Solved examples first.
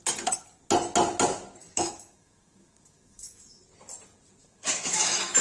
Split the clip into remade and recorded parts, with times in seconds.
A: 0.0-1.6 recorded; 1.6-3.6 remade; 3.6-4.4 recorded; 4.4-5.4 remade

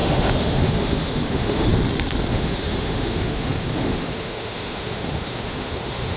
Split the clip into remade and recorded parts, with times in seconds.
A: 0.0-1.7 remade; 1.7-2.3 recorded; 2.3-6.2 remade

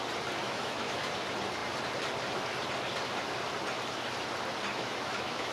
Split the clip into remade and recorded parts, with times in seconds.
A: 0.0-0.4 recorded; 0.4-1.0 remade; 1.0-4.7 recorded; 4.7-5.5 remade

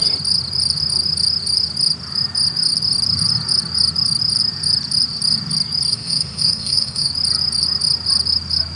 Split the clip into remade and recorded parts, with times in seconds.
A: 0.0-5.9 recorded; 5.9-7.1 remade; 7.1-8.8 recorded

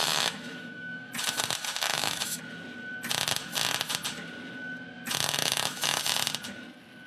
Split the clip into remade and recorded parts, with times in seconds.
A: 0.0-1.1 remade; 1.1-1.9 recorded; 1.9-2.4 remade; 2.4-5.4 recorded; 5.4-6.0 remade; 6.0-7.1 recorded

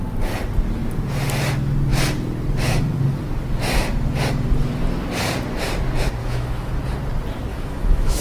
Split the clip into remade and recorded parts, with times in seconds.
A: 0.0-6.2 recorded; 6.2-6.7 remade; 6.7-7.5 recorded; 7.5-8.2 remade

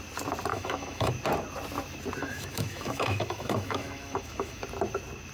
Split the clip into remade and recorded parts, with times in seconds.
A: 0.0-0.5 recorded; 0.5-1.1 remade; 1.1-2.2 recorded; 2.2-4.6 remade; 4.6-5.3 recorded